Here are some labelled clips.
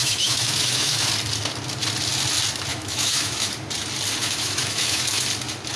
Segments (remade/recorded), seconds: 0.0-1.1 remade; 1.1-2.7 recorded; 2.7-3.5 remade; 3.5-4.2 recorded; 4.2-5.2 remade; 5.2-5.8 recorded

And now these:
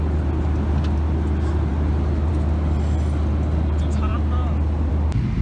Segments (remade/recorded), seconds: 0.0-5.4 recorded

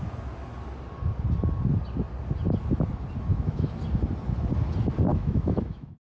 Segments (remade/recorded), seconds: 0.0-3.3 recorded; 3.3-3.8 remade; 3.8-5.1 recorded; 5.1-6.2 remade

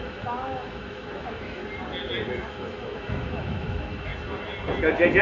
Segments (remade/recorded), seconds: 0.0-1.6 remade; 1.6-2.5 recorded; 2.5-4.1 remade; 4.1-5.2 recorded

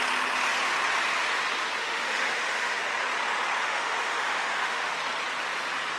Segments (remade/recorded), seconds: 0.0-1.8 recorded; 1.8-2.8 remade; 2.8-3.6 recorded; 3.6-4.9 remade; 4.9-6.0 recorded

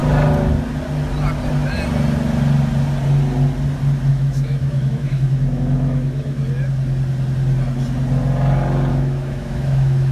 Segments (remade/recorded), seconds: 0.0-4.1 recorded; 4.1-6.4 remade; 6.4-8.9 recorded; 8.9-10.1 remade